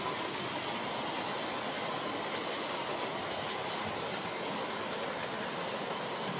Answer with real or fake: real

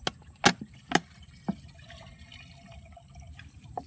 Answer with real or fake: real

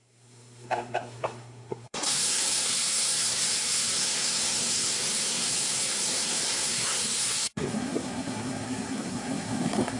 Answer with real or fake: fake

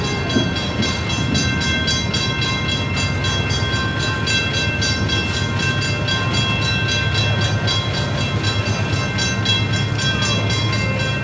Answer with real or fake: real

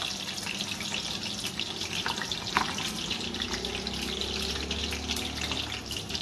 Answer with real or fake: real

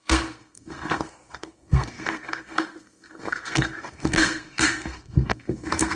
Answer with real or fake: fake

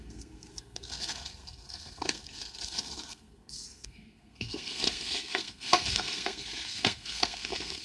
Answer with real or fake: fake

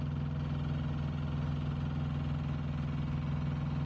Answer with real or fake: real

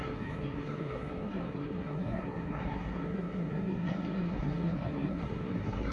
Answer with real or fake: fake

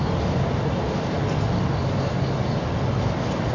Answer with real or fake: real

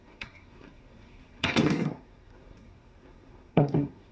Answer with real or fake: fake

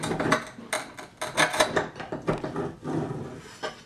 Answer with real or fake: real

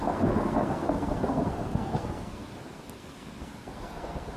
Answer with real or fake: fake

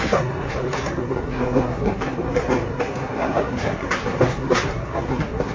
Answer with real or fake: fake